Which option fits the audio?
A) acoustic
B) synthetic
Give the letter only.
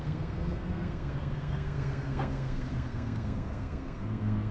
B